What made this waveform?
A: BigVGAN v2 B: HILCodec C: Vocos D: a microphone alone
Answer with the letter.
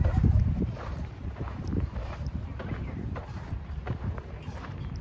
A